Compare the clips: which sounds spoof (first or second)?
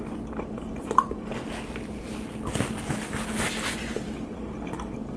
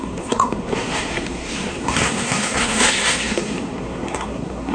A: second